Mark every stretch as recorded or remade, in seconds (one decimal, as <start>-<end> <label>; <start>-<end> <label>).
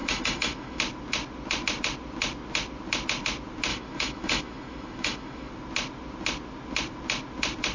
0.0-0.8 remade; 0.8-3.7 recorded; 3.7-5.5 remade; 5.5-7.7 recorded